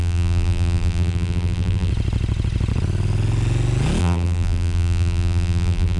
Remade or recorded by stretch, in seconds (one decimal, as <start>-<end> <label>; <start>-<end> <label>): 0.0-1.9 remade; 1.9-4.0 recorded; 4.0-6.0 remade